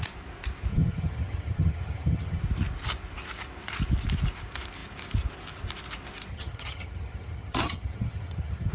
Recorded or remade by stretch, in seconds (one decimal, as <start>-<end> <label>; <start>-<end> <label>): 0.0-0.7 recorded; 0.7-2.4 remade; 2.4-6.3 recorded; 6.3-8.7 remade